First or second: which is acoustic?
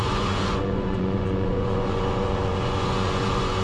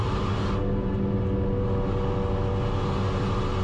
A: second